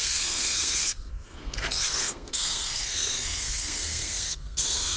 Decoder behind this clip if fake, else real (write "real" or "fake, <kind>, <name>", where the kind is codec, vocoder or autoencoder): fake, codec, SNAC